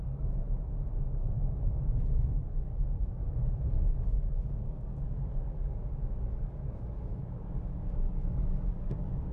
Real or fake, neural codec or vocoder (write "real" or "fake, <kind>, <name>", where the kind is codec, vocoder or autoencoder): fake, codec, DAC